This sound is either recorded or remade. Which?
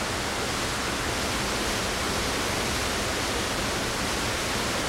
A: recorded